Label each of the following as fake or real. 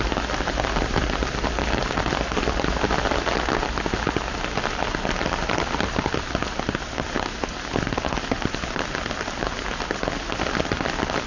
real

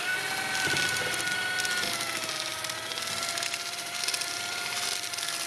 real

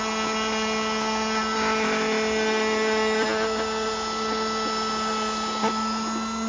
real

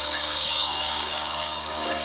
fake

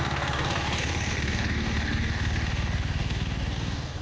fake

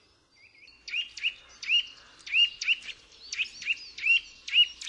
real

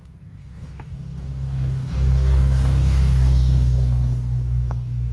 fake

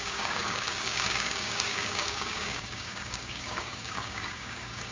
fake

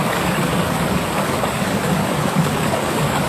fake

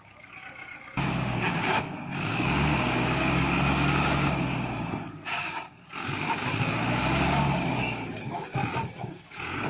fake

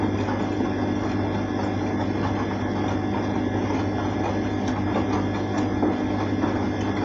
real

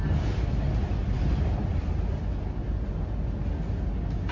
real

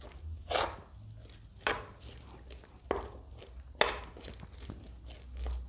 real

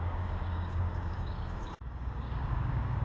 fake